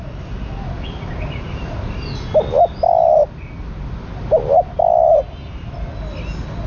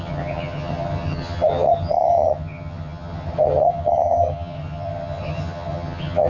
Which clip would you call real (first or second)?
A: first